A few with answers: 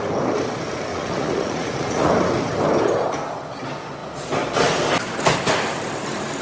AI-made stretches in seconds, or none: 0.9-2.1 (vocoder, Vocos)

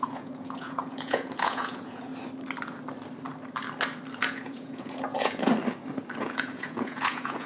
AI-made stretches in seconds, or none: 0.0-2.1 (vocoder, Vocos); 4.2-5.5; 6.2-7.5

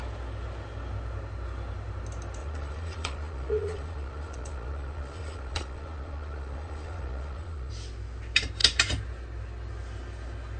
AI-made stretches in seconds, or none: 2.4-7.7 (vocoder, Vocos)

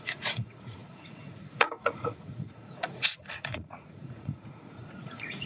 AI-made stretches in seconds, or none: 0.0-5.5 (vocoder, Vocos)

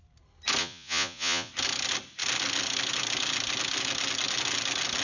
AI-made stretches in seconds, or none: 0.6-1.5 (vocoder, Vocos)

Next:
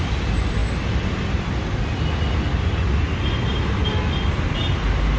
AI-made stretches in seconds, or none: none

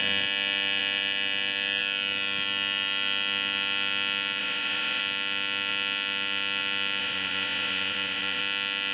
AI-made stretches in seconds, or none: 4.4-5.0 (vocoder, Vocos); 7.0-8.4

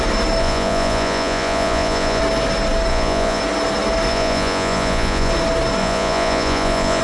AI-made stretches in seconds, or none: 0.4-2.2 (vocoder, Vocos); 2.9-3.4; 4.1-5.3; 5.8-7.0